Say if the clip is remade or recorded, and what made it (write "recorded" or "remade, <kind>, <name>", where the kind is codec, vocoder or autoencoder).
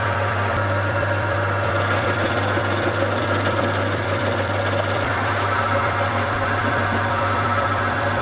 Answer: remade, vocoder, BigVGAN v2